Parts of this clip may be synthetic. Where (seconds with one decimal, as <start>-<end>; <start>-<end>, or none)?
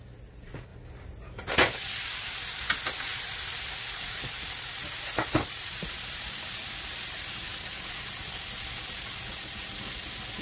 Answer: none